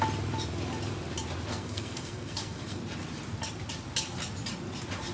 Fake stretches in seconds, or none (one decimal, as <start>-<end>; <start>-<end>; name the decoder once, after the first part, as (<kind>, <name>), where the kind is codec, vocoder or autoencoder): 1.5-2.8 (codec, SNAC)